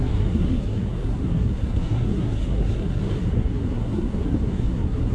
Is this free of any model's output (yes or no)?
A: no